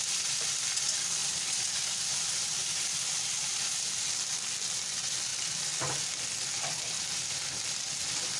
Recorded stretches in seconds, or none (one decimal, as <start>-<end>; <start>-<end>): 0.0-1.2; 3.5-5.3; 6.0-8.4